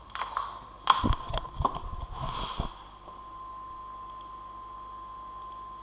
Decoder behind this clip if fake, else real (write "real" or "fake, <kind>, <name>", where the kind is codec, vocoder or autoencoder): real